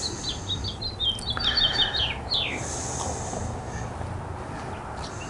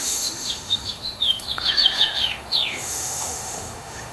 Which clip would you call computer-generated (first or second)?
second